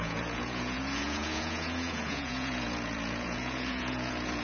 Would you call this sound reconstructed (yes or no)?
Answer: yes